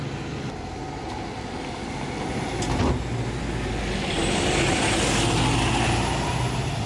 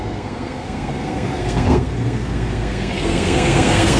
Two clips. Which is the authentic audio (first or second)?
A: first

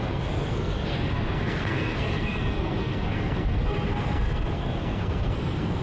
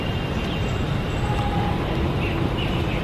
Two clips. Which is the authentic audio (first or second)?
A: second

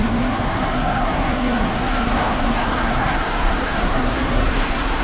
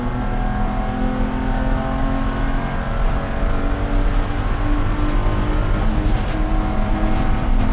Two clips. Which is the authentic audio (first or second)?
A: second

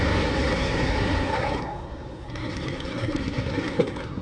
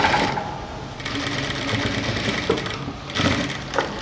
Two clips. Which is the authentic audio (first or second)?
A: second